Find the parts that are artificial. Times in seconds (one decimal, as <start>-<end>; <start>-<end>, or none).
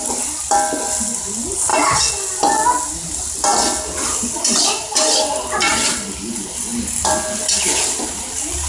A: none